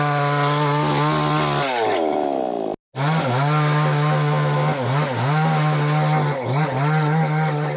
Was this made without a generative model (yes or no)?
yes